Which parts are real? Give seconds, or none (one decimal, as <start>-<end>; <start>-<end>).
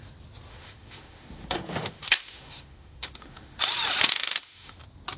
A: 0.0-0.5; 3.6-4.1; 4.8-5.2